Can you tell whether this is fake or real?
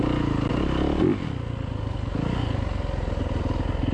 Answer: real